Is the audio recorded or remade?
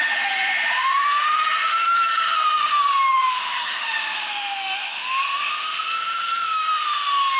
remade